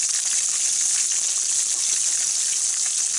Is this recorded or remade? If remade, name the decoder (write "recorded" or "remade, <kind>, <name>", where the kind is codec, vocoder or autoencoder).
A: recorded